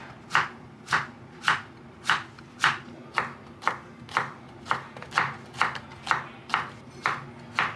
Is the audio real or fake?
real